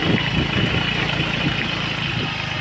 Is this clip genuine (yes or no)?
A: yes